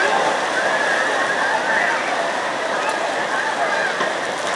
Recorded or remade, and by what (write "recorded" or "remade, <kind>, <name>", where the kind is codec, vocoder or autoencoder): recorded